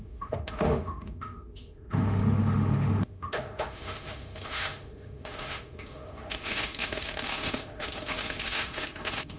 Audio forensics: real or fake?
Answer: fake